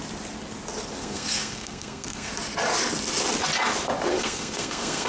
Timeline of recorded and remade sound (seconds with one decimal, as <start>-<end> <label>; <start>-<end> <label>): 0.0-1.0 recorded; 1.0-2.3 remade; 2.3-4.1 recorded; 4.1-5.1 remade